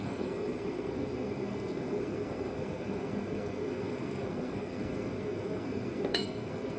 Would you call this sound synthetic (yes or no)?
yes